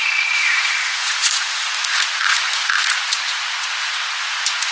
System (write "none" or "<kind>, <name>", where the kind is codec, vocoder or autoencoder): vocoder, Vocos